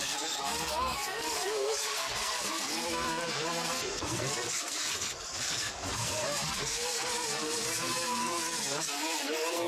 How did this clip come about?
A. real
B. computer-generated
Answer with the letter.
B